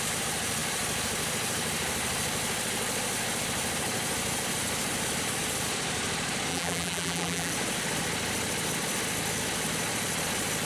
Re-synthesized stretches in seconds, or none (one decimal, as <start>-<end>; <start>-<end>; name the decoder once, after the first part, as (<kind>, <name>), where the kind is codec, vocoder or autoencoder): 6.5-7.5 (vocoder, BigVGAN v2)